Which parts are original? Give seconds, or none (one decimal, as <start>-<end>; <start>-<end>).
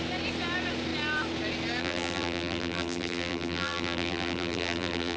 0.0-1.8